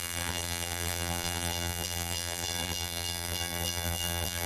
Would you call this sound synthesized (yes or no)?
yes